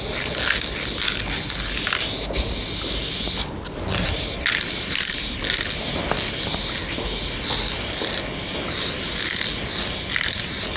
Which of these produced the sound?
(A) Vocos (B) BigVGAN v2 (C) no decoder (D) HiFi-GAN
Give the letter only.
C